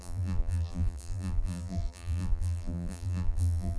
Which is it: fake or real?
fake